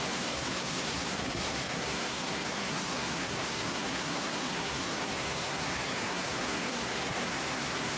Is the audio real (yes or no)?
no